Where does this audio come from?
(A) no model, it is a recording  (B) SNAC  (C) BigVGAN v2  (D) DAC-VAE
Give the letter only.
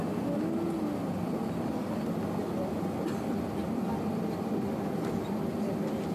A